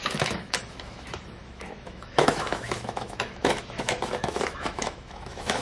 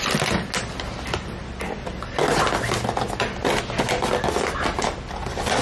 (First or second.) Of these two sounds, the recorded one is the second